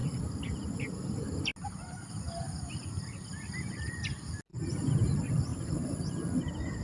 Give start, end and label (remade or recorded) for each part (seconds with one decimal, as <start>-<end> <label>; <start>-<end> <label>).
0.0-4.5 recorded; 4.5-5.1 remade; 5.1-5.5 recorded; 5.5-6.0 remade; 6.0-6.8 recorded